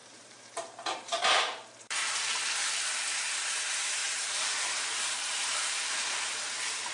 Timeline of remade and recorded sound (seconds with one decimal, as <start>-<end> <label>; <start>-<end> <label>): 0.0-2.7 remade; 2.7-4.0 recorded; 4.0-6.2 remade; 6.2-6.9 recorded